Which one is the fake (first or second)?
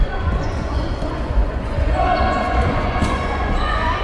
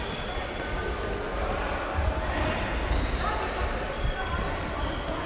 first